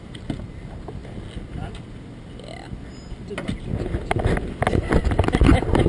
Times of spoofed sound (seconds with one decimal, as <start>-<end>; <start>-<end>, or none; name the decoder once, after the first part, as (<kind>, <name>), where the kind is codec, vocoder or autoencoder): none